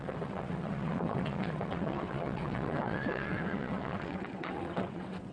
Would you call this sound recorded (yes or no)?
no